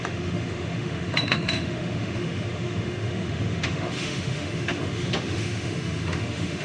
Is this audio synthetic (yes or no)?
yes